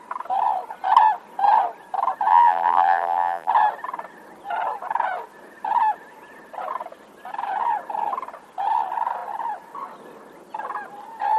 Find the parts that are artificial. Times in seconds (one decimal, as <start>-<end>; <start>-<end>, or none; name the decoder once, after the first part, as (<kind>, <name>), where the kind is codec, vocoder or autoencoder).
2.3-3.5 (vocoder, BigVGAN v2)